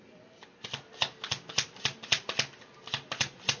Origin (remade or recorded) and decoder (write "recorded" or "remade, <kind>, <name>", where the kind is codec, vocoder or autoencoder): recorded